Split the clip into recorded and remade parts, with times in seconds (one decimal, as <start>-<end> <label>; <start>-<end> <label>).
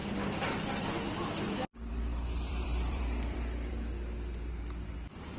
0.0-1.9 recorded; 1.9-3.7 remade; 3.7-5.4 recorded